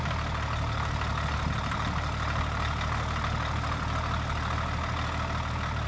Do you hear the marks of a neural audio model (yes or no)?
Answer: no